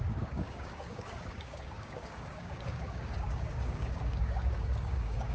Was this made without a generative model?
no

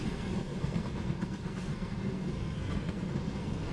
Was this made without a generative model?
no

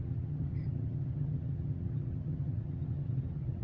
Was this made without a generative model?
no